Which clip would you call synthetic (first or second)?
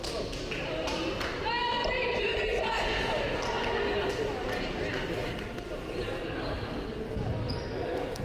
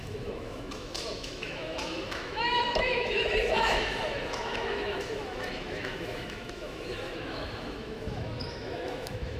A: second